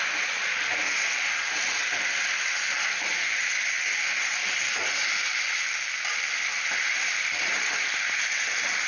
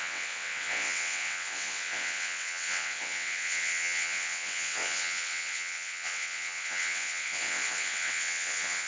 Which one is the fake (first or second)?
second